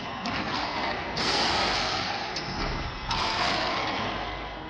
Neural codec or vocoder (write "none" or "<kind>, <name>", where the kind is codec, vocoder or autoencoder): codec, SNAC